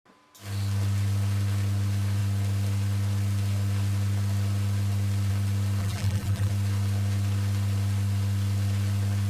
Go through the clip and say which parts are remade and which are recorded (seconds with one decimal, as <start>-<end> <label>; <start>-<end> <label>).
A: 0.0-5.8 recorded; 5.8-6.5 remade; 6.5-9.3 recorded